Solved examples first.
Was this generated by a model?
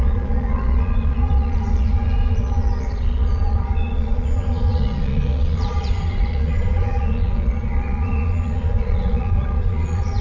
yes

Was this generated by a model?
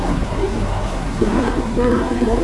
yes